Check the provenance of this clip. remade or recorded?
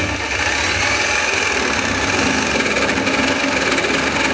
recorded